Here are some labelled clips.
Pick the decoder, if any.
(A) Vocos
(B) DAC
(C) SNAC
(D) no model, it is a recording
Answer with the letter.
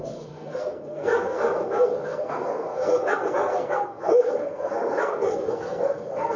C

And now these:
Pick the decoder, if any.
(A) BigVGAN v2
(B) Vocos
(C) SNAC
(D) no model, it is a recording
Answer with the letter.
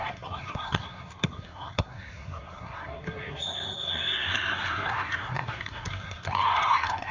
C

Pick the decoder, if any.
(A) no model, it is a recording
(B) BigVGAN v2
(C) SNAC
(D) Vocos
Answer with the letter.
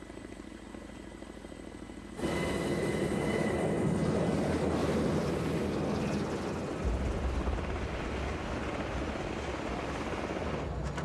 A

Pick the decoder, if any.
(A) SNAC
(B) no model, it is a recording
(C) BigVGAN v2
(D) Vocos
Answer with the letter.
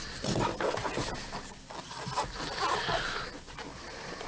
B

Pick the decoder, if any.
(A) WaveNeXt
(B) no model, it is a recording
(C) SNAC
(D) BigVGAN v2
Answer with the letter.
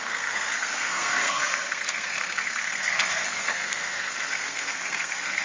C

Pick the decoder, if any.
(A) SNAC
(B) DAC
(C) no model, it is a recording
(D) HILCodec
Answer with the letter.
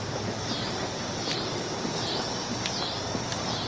C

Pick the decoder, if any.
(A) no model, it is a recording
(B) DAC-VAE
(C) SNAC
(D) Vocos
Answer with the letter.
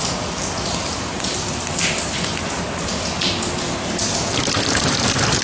A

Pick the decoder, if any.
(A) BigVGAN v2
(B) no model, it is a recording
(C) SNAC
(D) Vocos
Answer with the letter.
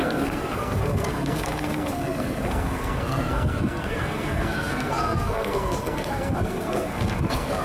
C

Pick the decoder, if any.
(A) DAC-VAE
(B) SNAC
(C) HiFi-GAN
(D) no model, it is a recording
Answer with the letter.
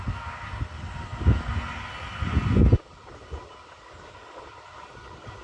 D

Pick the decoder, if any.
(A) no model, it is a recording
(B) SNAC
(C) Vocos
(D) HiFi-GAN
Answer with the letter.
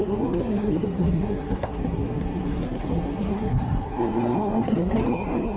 B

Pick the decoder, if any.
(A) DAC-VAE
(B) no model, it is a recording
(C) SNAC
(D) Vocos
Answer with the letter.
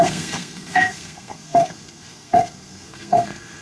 C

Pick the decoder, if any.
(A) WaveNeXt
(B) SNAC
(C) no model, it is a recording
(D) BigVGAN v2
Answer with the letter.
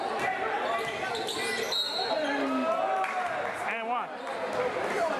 C